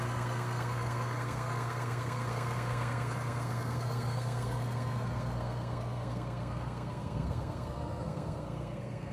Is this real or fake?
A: fake